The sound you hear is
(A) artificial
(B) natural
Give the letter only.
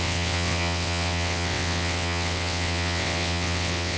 A